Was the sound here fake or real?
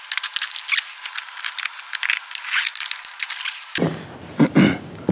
real